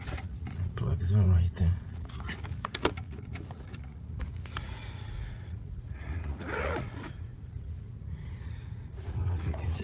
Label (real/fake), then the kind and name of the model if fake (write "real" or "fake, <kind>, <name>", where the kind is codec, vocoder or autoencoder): fake, vocoder, Vocos